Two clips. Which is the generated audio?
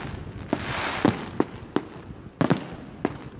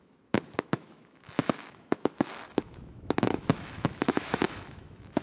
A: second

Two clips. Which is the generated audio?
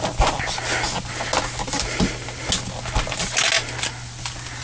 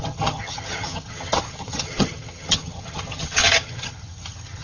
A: second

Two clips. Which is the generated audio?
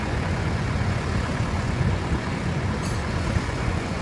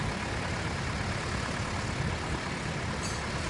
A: first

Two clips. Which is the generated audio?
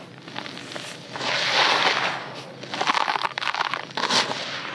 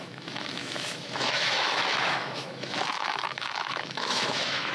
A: second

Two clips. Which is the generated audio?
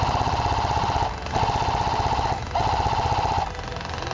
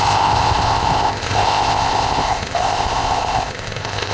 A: second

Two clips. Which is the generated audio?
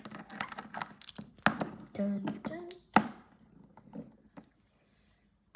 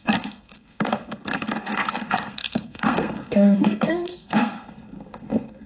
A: second